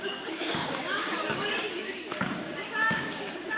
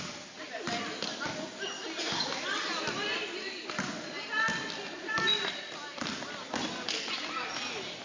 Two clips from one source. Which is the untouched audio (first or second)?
second